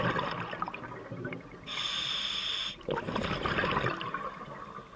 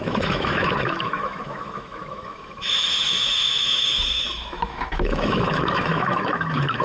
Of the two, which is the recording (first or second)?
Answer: first